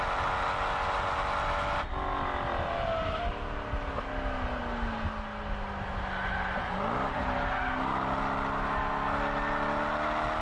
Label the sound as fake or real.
real